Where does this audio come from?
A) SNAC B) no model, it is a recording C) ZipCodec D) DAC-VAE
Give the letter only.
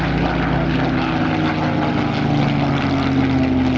B